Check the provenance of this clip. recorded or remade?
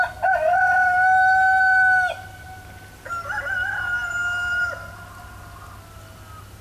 recorded